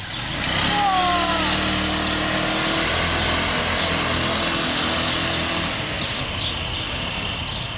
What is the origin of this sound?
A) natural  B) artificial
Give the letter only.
A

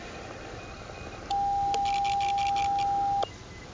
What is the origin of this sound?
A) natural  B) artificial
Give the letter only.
A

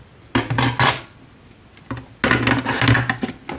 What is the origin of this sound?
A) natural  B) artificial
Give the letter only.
A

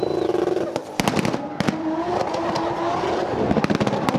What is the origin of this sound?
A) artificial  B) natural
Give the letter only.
B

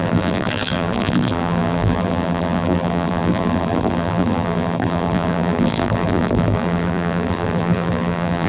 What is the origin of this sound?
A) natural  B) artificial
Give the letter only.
B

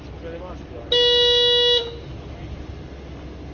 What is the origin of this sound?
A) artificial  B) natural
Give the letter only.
B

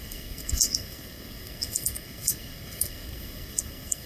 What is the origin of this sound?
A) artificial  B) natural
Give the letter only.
A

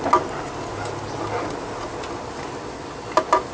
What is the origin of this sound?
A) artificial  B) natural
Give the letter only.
B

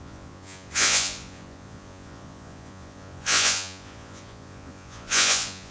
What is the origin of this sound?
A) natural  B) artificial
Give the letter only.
B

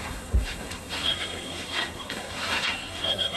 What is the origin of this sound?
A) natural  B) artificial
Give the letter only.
B